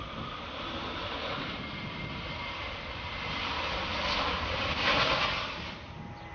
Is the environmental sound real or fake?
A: real